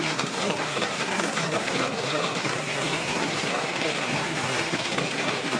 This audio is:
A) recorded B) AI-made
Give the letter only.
B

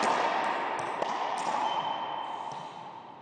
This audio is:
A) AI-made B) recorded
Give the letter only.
B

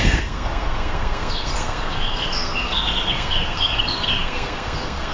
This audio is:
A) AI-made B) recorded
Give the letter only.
A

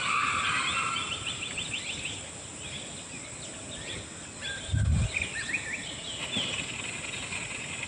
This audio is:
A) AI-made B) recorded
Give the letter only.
B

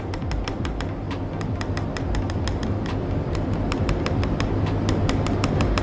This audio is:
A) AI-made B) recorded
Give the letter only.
B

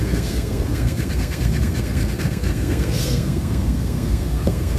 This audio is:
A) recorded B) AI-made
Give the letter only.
B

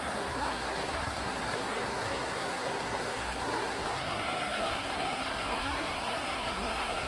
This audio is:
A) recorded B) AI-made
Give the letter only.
B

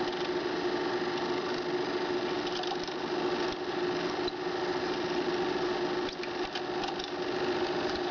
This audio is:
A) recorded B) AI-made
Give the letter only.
A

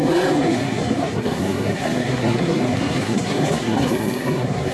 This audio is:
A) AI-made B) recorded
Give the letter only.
A